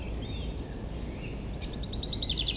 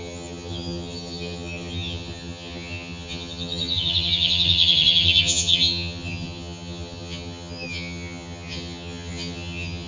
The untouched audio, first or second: first